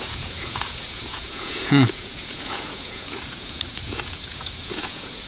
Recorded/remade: remade